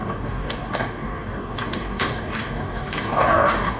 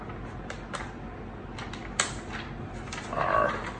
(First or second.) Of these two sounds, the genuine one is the second